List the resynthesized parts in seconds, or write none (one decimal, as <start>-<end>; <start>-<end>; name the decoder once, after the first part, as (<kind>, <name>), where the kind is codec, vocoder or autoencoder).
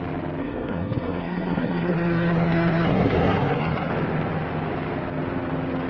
0.4-3.9 (codec, SNAC)